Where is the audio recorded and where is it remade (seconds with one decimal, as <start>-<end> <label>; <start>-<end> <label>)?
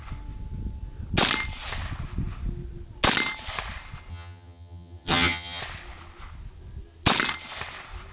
0.0-4.1 recorded; 4.1-5.6 remade; 5.6-8.1 recorded